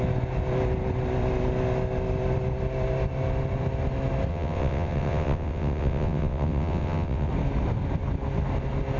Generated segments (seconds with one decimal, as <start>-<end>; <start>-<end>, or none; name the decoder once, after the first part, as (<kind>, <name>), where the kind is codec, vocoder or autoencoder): 4.3-7.3 (vocoder, WaveNeXt)